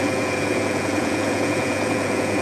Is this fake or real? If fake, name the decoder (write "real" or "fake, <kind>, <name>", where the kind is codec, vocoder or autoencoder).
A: fake, vocoder, Vocos